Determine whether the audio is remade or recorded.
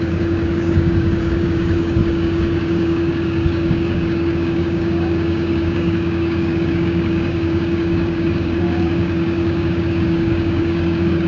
remade